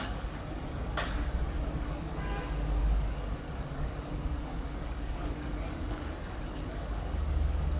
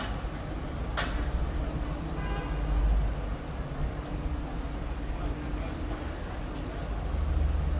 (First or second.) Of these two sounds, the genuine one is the second